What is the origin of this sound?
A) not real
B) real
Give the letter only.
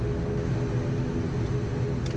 B